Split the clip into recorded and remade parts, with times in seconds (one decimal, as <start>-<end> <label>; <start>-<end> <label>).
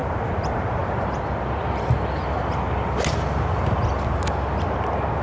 0.0-5.2 recorded